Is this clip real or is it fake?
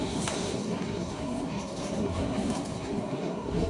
fake